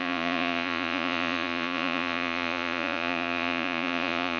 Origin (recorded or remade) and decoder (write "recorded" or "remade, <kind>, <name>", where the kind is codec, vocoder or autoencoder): remade, vocoder, Vocos